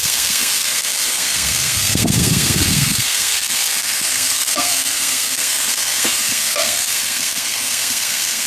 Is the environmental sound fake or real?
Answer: fake